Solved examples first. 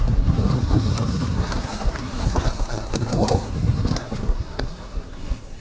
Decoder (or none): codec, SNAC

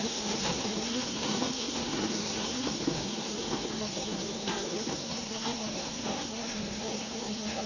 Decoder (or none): codec, SNAC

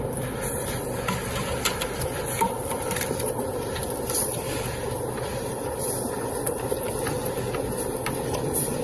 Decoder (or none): none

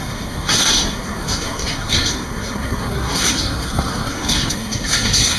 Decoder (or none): codec, SNAC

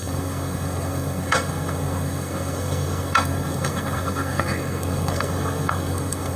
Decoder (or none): codec, SNAC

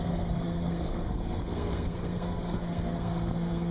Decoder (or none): codec, SNAC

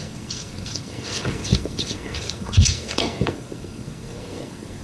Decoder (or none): codec, SNAC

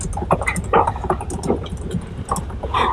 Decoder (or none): none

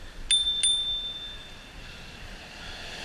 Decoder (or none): none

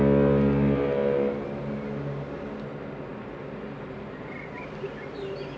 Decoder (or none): none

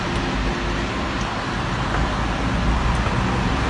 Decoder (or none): none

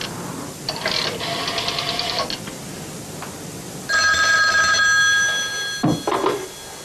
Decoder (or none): none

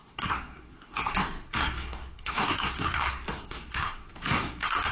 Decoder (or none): codec, SNAC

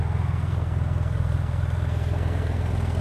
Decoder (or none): codec, SNAC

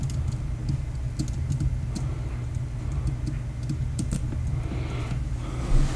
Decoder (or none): none